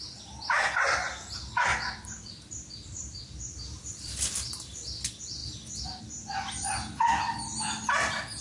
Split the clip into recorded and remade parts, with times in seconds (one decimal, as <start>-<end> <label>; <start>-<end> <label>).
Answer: 0.0-1.7 recorded; 1.7-4.6 remade; 4.6-8.4 recorded